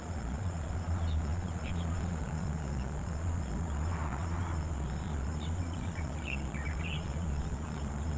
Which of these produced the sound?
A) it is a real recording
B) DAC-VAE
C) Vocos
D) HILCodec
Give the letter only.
C